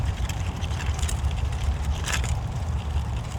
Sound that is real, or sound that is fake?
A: fake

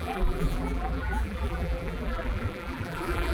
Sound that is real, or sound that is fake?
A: fake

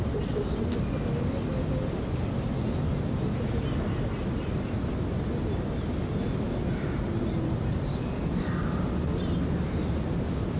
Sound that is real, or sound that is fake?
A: real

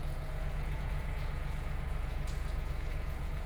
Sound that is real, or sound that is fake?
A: fake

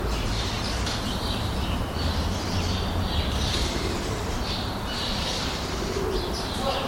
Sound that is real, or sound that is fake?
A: fake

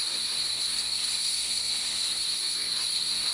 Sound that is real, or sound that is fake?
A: fake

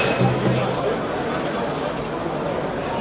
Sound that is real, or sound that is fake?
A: real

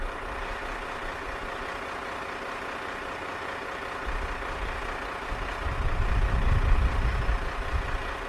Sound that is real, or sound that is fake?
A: real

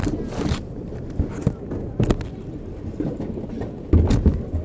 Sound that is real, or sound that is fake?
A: real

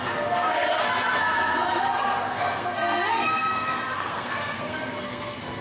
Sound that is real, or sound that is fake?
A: fake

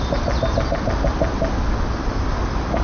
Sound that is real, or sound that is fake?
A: real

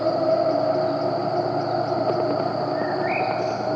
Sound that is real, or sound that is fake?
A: real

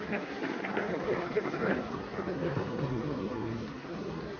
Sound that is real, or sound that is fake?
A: fake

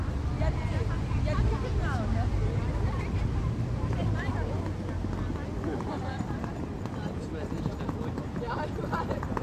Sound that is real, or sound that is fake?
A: real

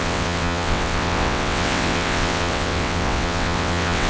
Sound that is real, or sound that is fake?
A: fake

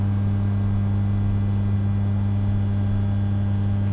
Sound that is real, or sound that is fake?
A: real